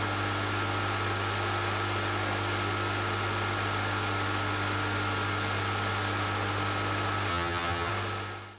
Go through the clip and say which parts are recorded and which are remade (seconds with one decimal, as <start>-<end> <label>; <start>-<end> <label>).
0.0-7.3 recorded; 7.3-7.9 remade; 7.9-8.6 recorded